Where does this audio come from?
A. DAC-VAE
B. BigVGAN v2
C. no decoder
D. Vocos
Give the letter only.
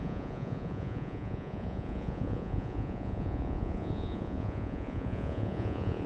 D